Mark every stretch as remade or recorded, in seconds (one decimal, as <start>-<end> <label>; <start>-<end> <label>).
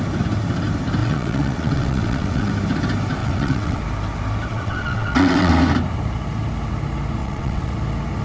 0.0-1.0 recorded; 1.0-2.5 remade; 2.5-3.2 recorded; 3.2-3.8 remade; 3.8-4.5 recorded; 4.5-5.5 remade; 5.5-7.2 recorded; 7.2-7.7 remade; 7.7-8.2 recorded